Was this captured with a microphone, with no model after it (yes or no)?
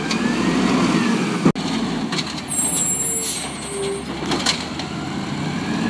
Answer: yes